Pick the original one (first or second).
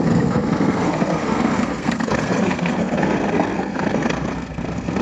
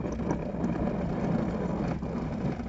second